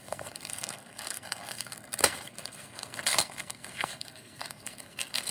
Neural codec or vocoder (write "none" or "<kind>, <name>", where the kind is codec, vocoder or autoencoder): codec, SNAC